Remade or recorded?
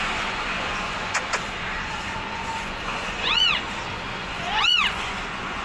remade